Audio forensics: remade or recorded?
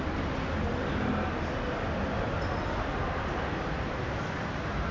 recorded